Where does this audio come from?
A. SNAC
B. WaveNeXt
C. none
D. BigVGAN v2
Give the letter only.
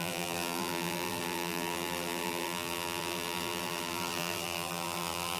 D